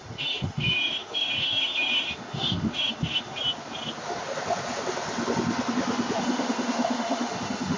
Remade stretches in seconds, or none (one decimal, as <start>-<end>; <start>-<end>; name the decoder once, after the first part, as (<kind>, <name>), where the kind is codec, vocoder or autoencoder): 0.0-3.4 (autoencoder, DAC-VAE); 6.2-7.8